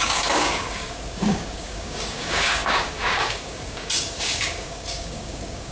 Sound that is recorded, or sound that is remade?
remade